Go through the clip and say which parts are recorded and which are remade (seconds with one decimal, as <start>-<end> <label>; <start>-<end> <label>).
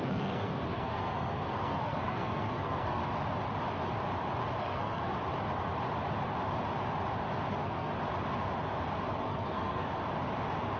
0.0-3.0 remade; 3.0-4.6 recorded; 4.6-5.1 remade; 5.1-7.5 recorded; 7.5-7.9 remade; 7.9-9.2 recorded; 9.2-9.9 remade; 9.9-10.8 recorded